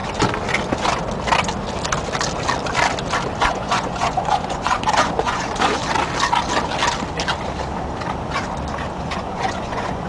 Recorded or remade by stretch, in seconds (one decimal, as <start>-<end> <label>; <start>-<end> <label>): 0.0-3.4 recorded; 3.4-5.8 remade; 5.8-9.0 recorded; 9.0-10.1 remade